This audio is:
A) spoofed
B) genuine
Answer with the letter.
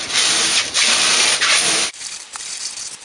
B